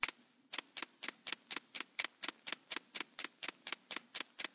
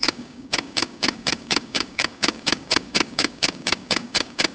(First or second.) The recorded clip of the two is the first